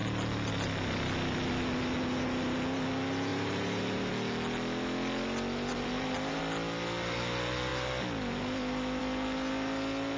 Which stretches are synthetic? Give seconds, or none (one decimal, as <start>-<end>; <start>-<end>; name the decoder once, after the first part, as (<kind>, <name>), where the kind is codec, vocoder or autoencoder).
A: 3.3-4.1 (vocoder, BigVGAN v2); 5.7-6.4